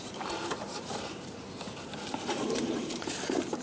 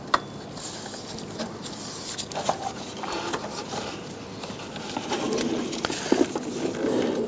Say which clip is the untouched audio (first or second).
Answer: second